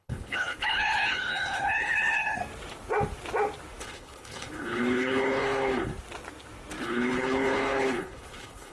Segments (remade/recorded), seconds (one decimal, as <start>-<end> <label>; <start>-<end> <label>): 0.0-2.4 remade; 2.4-3.8 recorded; 3.8-5.9 remade; 5.9-6.8 recorded; 6.8-8.7 remade